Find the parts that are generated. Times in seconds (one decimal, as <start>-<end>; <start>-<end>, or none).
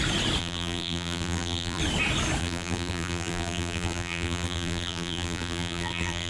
0.4-1.8; 2.4-6.3